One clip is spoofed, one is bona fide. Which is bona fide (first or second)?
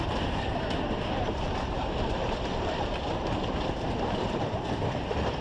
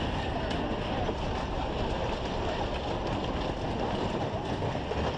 second